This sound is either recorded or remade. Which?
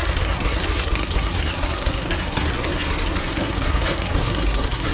remade